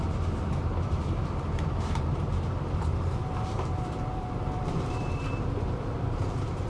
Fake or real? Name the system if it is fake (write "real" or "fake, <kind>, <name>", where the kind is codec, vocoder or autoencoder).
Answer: fake, vocoder, BigVGAN v2